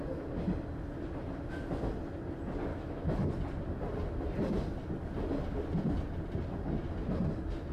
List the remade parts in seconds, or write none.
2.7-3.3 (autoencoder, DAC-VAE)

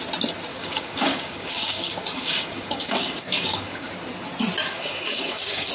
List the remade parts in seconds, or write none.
0.5-3.9 (codec, DAC); 4.6-5.7

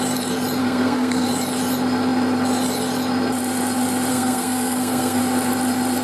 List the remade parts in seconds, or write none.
0.6-1.3 (codec, SNAC); 4.1-5.2